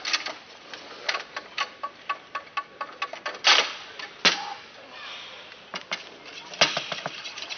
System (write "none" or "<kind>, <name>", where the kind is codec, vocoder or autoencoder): none